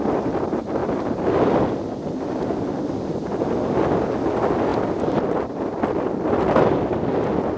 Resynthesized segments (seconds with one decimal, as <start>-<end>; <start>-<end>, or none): 0.8-1.6; 4.7-7.6